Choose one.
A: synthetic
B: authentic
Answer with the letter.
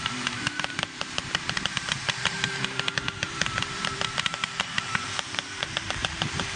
A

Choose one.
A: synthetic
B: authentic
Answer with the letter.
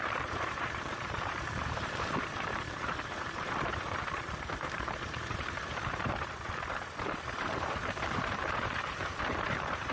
A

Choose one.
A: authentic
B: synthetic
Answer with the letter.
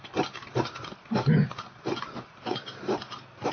A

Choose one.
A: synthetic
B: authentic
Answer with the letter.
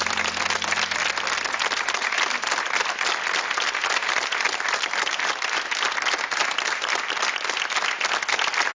B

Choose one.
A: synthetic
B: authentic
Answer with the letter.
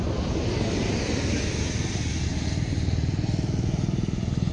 B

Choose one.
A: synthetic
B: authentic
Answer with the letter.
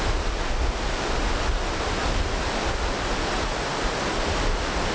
B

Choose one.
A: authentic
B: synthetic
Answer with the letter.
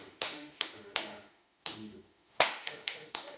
B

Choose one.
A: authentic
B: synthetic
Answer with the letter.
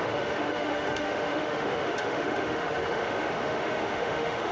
B